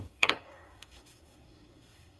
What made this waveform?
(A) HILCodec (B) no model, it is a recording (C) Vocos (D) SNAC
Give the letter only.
D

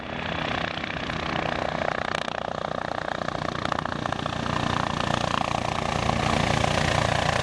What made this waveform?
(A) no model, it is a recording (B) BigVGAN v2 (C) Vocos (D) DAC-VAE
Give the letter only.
A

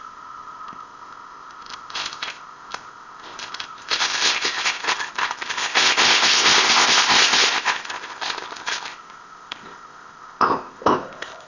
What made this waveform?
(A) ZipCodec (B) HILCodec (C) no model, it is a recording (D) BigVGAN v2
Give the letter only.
A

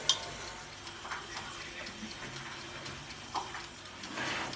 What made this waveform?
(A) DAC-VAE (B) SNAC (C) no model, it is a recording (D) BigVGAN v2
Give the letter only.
C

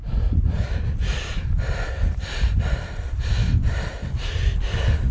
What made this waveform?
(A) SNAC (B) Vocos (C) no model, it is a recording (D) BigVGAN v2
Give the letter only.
C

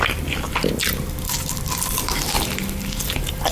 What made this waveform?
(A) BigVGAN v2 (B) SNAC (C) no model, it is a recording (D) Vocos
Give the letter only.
A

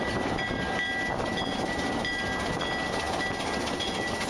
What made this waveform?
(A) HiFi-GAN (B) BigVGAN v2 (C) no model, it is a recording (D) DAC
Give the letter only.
C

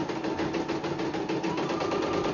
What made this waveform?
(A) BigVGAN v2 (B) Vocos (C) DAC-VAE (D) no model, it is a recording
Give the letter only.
D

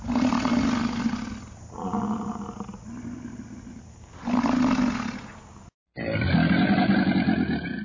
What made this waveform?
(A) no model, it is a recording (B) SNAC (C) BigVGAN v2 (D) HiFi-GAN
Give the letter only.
A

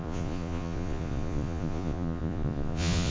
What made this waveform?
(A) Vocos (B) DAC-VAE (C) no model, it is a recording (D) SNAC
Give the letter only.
A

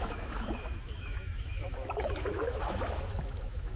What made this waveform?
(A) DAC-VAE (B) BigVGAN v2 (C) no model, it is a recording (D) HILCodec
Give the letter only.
A